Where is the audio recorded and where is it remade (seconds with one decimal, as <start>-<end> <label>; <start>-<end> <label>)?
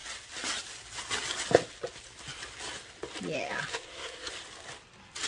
0.0-3.7 recorded; 3.7-4.3 remade; 4.3-5.3 recorded